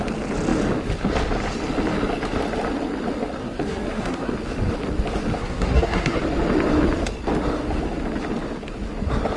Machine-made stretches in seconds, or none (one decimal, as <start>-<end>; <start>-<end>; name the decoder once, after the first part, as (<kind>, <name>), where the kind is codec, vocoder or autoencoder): 3.4-4.3 (codec, SNAC); 5.4-6.2